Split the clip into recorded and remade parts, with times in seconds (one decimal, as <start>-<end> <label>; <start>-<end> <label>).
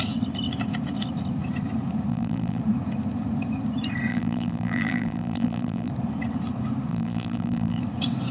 0.0-2.1 recorded; 2.1-2.6 remade; 2.6-4.1 recorded; 4.1-5.9 remade; 5.9-6.9 recorded; 6.9-7.8 remade; 7.8-8.3 recorded